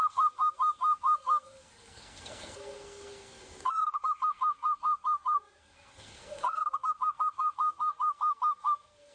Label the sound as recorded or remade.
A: remade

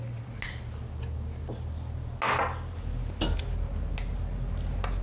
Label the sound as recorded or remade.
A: recorded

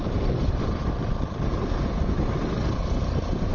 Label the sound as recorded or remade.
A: remade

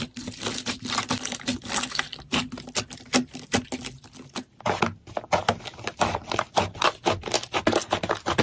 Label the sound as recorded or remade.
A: recorded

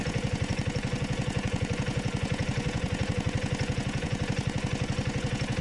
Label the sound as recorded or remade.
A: remade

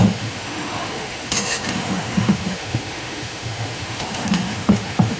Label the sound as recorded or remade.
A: remade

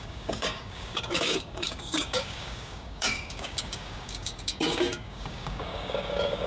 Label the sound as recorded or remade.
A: remade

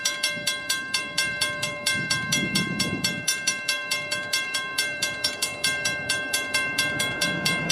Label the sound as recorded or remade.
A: remade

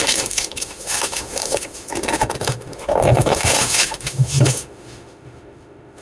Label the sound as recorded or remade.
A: remade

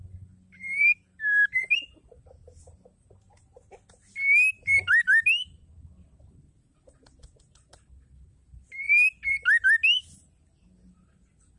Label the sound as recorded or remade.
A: recorded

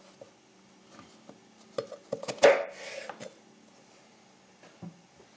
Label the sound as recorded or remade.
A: recorded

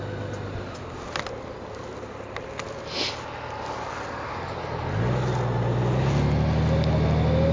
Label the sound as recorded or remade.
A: recorded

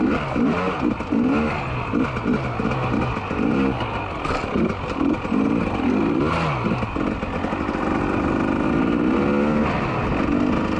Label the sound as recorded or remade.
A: recorded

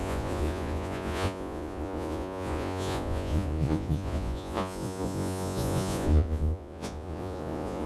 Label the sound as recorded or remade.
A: remade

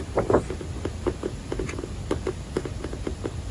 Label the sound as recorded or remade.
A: recorded